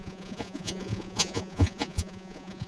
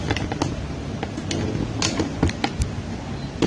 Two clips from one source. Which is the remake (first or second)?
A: first